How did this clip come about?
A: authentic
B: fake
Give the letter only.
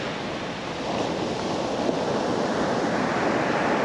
A